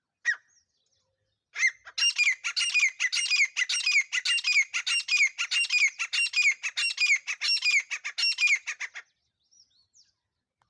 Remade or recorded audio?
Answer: recorded